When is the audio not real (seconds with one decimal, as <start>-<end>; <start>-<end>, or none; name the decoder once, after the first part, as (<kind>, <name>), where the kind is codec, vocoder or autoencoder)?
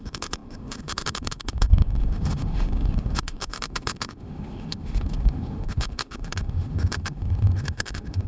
0.0-8.3 (autoencoder, DAC-VAE)